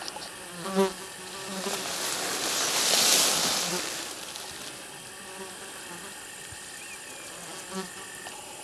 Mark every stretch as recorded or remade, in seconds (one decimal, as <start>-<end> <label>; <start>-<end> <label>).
0.0-8.6 recorded